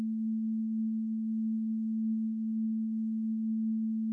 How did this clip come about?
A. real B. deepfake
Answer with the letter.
B